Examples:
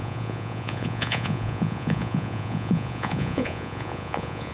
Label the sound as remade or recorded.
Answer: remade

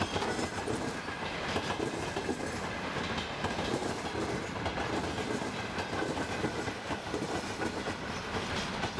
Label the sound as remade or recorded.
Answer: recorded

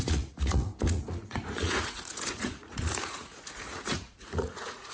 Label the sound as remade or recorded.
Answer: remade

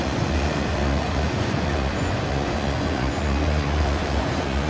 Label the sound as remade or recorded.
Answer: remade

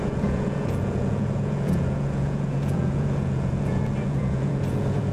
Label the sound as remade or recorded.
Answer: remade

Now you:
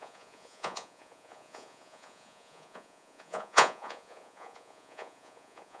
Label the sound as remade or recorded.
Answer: remade